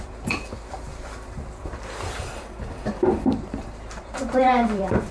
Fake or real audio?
fake